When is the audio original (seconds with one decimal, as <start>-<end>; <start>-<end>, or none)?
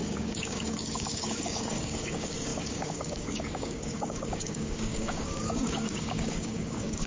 none